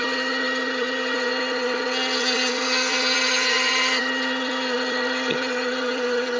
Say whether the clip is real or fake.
fake